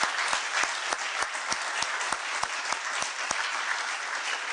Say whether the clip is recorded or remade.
recorded